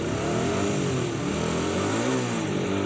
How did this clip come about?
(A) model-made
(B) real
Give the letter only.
B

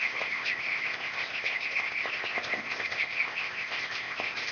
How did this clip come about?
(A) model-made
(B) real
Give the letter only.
A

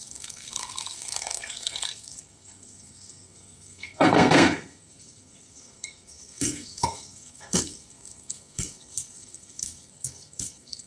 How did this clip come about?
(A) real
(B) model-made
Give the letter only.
B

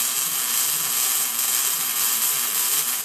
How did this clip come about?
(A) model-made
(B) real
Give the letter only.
A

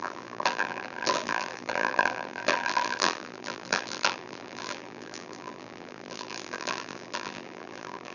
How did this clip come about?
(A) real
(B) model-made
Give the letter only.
B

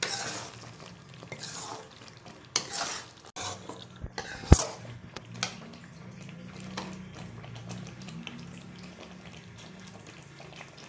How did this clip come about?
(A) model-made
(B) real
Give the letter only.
B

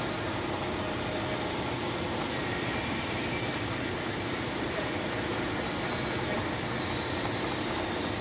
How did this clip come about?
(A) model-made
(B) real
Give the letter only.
B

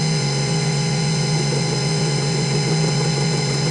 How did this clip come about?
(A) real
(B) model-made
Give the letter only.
B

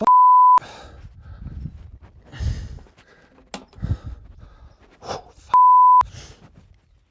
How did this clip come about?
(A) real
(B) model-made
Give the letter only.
A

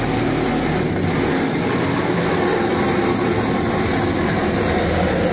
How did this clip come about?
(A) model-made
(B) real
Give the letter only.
B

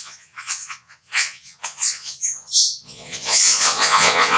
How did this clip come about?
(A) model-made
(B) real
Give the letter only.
A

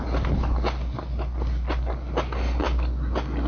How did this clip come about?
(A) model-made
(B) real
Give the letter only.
B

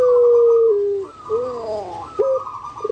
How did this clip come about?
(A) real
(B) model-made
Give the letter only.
A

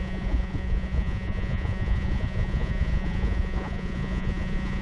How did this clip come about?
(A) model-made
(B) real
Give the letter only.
A